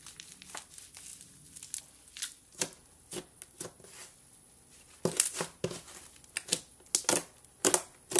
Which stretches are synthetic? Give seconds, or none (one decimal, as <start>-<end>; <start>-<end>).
none